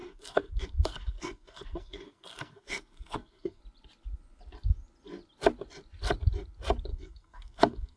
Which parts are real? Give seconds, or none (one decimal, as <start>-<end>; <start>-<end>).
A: 3.6-6.9